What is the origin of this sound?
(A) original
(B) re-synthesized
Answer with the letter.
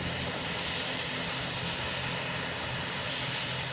A